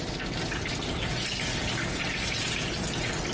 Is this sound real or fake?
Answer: real